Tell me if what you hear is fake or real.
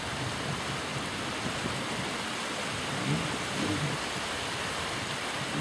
real